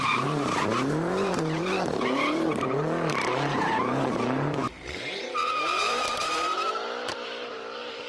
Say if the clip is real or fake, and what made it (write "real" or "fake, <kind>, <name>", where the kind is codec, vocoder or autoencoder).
fake, vocoder, BigVGAN v2